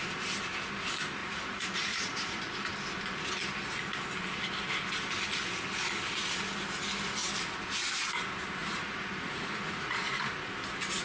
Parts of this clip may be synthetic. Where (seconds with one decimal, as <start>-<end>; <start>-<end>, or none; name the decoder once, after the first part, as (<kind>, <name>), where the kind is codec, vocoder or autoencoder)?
1.2-2.4 (vocoder, Vocos); 8.6-10.2